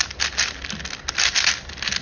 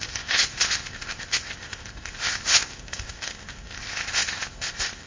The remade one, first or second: second